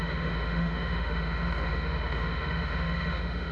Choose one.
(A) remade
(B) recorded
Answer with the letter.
A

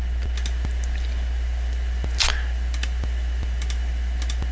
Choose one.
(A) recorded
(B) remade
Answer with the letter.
A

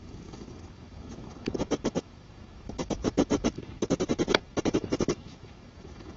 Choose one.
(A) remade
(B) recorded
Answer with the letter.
A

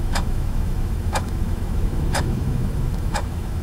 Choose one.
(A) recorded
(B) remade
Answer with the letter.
B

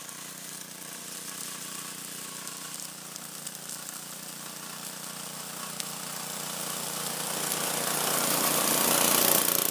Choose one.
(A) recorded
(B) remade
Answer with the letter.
A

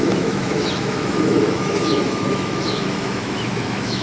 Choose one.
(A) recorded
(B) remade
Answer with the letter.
B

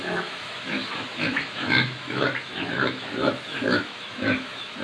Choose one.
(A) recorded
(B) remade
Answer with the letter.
B